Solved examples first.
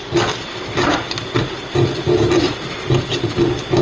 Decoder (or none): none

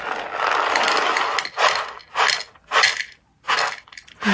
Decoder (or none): none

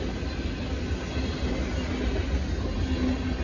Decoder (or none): none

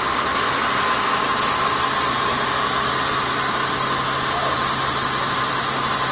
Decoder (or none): none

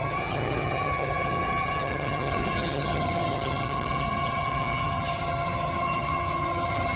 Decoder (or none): vocoder, HiFi-GAN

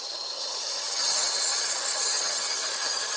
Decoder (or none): vocoder, HiFi-GAN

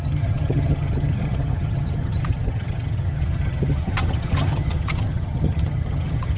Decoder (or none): vocoder, HiFi-GAN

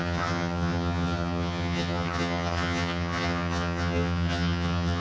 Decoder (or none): vocoder, HiFi-GAN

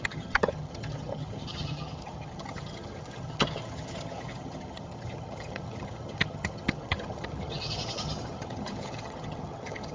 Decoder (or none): vocoder, HiFi-GAN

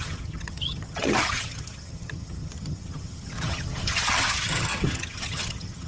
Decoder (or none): vocoder, HiFi-GAN